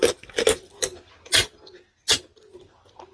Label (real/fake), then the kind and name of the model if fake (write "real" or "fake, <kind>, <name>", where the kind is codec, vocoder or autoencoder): real